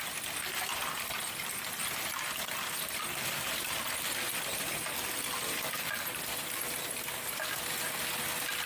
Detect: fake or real real